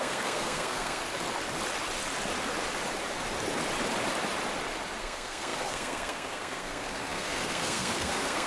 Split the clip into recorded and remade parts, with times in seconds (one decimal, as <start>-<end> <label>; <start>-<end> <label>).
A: 0.0-1.0 remade; 1.0-5.0 recorded; 5.0-8.5 remade